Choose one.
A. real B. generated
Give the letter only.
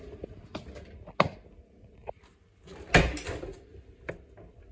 A